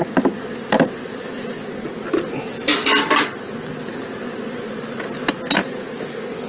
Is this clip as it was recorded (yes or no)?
yes